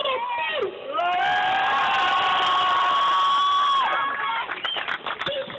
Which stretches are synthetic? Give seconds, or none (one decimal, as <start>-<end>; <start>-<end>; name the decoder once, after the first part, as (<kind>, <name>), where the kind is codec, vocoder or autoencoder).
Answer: 2.1-4.3 (vocoder, BigVGAN v2)